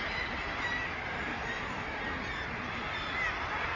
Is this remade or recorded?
recorded